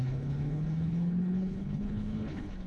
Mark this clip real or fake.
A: fake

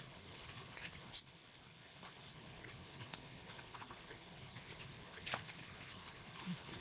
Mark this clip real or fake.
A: fake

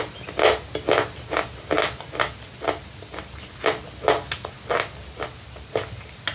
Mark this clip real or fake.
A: real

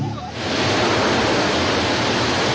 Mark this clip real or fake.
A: real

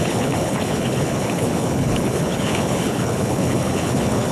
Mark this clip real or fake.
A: fake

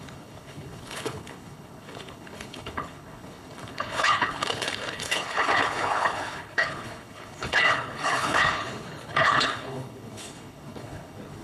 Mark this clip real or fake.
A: fake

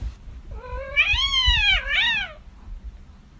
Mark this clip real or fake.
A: real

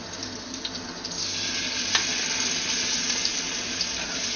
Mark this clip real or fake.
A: real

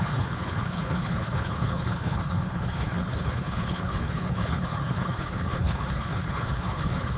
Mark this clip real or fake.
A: fake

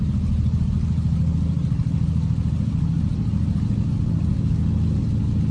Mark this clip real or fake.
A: real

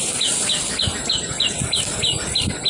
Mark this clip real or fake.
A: real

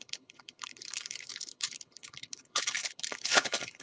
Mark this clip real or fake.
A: fake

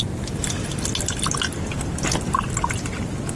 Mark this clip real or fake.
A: real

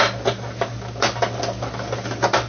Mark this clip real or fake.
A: real